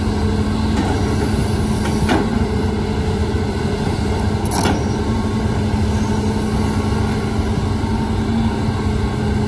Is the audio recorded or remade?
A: recorded